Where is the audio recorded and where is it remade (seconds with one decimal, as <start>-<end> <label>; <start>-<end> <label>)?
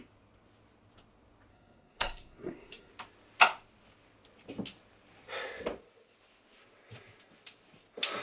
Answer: 0.0-1.5 recorded; 1.5-2.9 remade; 2.9-8.2 recorded